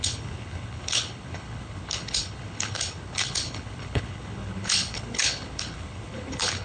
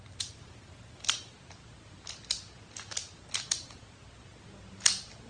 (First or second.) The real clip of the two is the second